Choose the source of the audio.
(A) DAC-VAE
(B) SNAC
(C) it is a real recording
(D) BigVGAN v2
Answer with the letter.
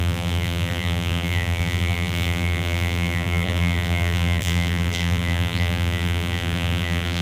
D